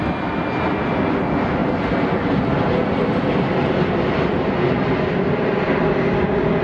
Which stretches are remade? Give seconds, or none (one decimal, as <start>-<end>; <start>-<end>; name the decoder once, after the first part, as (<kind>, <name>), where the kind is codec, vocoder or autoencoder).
none